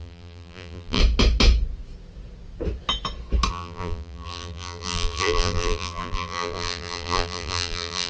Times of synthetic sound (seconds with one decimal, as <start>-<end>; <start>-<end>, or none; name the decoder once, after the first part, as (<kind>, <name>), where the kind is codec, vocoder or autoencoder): 0.0-1.0 (vocoder, BigVGAN v2); 3.5-8.1